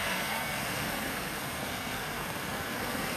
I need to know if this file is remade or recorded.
remade